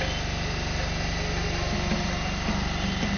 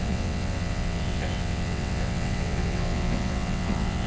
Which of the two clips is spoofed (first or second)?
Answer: second